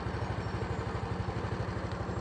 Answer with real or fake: real